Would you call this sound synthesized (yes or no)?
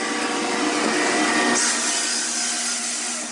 no